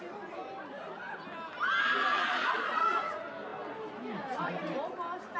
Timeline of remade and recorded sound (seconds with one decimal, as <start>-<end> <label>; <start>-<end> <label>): 0.0-2.1 recorded; 2.1-3.0 remade; 3.0-5.4 recorded